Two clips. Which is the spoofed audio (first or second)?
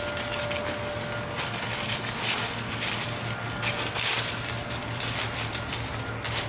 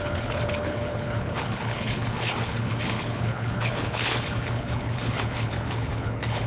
second